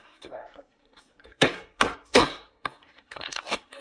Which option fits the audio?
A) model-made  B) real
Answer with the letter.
A